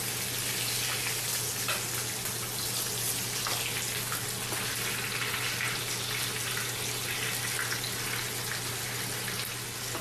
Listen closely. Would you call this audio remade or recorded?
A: recorded